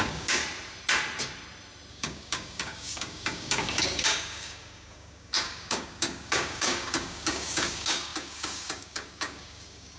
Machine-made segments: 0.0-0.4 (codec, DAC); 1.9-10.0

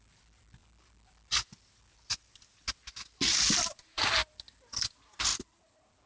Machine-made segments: none

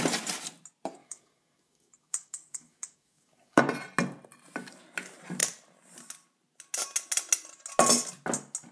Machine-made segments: 1.0-3.6 (codec, DAC)

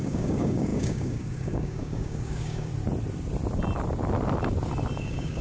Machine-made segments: 0.0-2.7 (codec, DAC); 5.0-5.4